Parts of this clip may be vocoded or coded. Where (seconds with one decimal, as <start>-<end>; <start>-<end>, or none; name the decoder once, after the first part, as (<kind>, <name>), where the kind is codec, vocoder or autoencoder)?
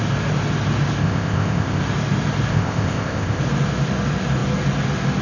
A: 1.0-1.8 (codec, ZipCodec); 2.5-3.4